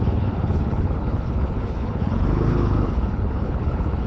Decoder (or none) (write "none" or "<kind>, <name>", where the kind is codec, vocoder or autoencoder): codec, HILCodec